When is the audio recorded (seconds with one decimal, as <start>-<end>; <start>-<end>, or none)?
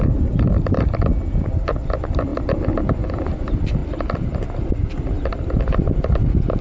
0.0-6.6